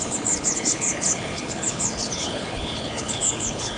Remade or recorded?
remade